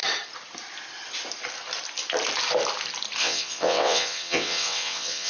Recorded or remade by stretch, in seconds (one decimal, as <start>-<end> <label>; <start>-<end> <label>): 0.0-3.2 recorded; 3.2-5.3 remade